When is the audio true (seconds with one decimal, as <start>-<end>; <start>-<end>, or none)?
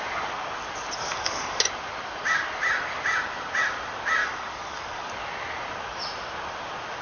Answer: 0.0-1.0; 1.6-4.2; 5.1-7.0